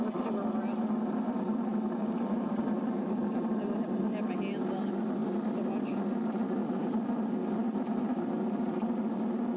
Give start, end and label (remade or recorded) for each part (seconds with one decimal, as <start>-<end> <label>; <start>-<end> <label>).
0.0-9.6 recorded